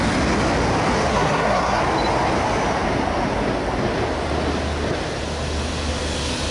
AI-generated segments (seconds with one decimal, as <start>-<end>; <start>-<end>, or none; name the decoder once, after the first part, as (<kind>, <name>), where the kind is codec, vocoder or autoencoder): 1.1-1.8 (codec, SNAC)